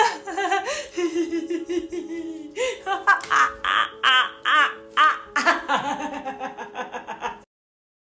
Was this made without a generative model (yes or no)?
yes